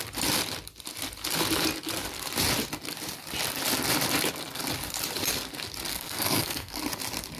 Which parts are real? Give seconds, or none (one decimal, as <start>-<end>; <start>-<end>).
0.0-5.9; 6.8-7.4